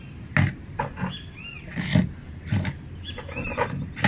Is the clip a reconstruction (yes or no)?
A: no